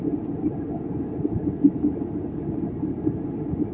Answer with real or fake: real